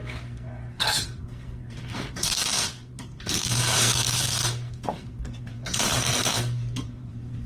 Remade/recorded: remade